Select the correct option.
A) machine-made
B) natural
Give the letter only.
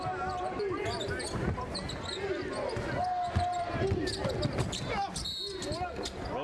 B